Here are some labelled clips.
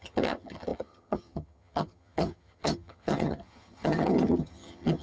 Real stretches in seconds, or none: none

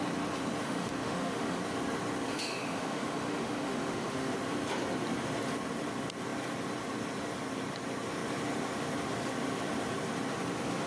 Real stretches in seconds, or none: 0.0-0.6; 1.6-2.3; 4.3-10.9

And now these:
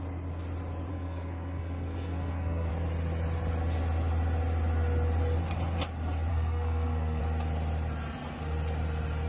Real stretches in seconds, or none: 0.0-0.9; 2.7-6.3; 7.2-9.3

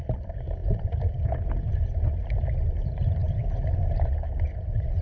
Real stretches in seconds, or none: 0.0-0.6; 1.7-5.0

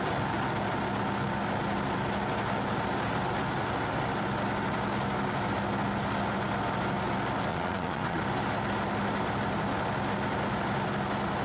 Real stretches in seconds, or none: 0.0-7.5; 8.2-11.4

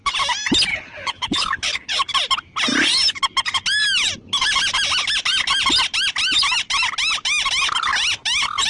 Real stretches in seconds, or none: 0.0-0.7; 2.0-8.7

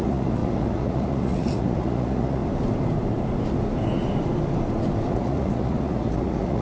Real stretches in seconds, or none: 2.4-5.1

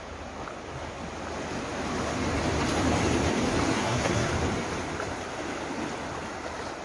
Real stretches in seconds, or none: 0.0-3.7; 4.3-6.8